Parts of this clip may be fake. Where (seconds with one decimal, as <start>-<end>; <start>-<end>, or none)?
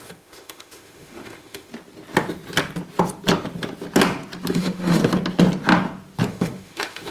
0.0-1.7; 4.5-5.0; 6.3-7.1